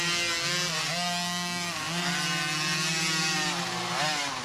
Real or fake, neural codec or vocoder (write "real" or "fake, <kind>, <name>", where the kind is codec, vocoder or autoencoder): real